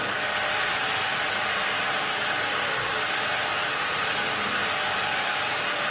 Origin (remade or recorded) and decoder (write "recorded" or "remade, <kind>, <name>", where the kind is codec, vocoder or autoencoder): recorded